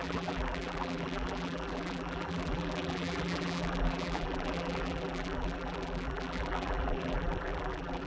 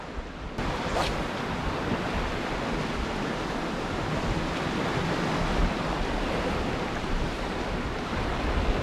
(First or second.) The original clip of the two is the second